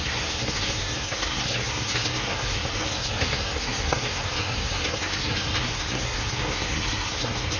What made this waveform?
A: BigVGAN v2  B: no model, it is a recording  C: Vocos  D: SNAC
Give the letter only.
D